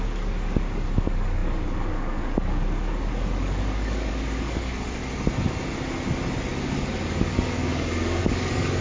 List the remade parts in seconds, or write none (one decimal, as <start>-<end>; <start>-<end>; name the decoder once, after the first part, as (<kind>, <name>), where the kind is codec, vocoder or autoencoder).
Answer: 0.0-5.0 (codec, DAC); 6.7-8.8